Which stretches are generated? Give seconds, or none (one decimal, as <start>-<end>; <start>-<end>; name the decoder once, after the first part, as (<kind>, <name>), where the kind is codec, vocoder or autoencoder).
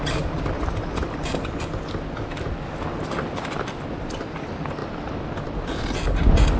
none